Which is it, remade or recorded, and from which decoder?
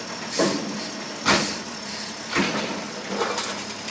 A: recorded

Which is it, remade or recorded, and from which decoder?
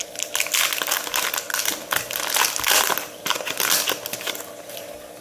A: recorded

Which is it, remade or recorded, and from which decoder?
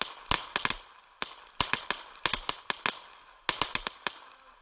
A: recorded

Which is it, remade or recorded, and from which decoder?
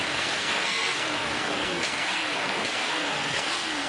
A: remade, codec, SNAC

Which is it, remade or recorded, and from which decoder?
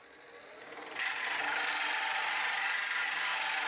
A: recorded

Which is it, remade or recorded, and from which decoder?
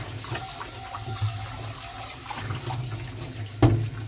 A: recorded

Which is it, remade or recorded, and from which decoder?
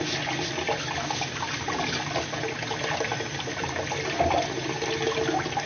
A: recorded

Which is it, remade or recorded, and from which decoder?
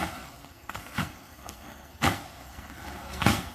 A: remade, codec, SNAC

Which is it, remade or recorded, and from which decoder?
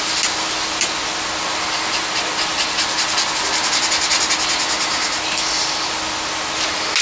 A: recorded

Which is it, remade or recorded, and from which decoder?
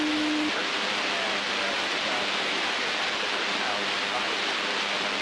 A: recorded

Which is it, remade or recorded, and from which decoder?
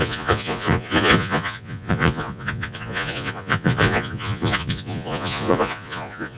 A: remade, vocoder, Vocos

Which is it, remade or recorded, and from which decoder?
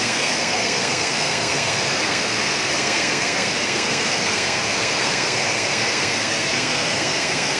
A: remade, codec, SNAC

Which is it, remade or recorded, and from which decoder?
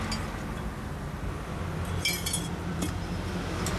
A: recorded